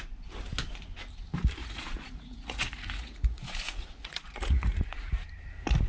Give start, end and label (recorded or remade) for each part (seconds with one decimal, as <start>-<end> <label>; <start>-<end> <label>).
0.0-1.6 recorded; 1.6-5.1 remade; 5.1-5.9 recorded